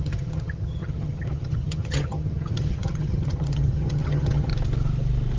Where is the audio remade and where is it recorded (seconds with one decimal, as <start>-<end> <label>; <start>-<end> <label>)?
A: 0.0-4.5 remade; 4.5-5.4 recorded